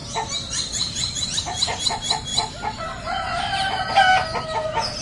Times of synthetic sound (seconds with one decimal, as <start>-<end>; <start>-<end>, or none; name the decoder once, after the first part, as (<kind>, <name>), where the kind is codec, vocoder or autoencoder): 2.3-3.9 (vocoder, BigVGAN v2)